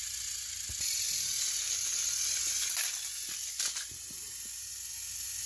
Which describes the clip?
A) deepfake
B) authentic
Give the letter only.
B